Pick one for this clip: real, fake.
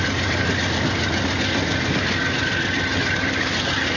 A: real